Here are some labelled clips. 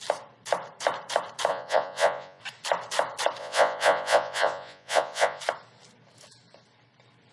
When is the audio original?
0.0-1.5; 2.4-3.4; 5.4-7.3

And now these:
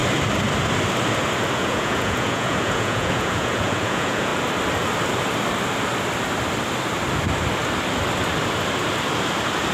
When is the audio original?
0.0-1.6; 4.3-9.7

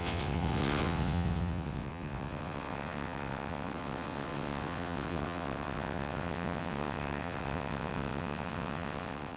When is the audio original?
none

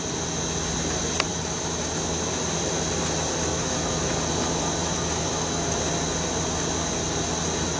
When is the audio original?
0.0-1.3; 1.9-3.5; 4.0-4.8; 5.8-7.8

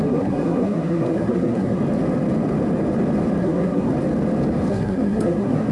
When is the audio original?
1.8-3.4; 3.9-4.7

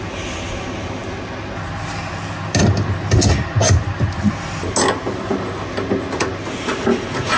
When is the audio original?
0.0-7.4

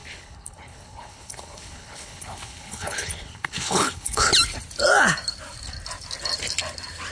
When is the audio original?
4.3-7.1

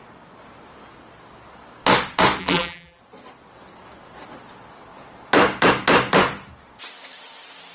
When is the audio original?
0.0-2.4; 3.0-7.7